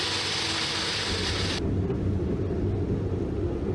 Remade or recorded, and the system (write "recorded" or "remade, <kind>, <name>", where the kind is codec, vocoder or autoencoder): recorded